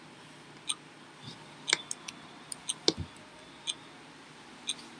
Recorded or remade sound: recorded